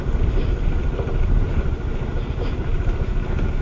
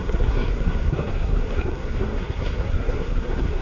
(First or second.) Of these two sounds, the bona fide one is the first